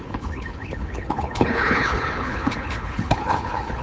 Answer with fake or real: fake